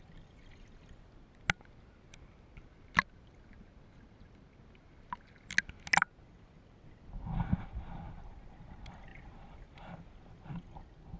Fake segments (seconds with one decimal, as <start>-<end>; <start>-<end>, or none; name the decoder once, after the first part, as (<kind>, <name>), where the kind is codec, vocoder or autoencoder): none